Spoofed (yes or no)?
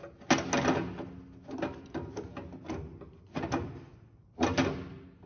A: no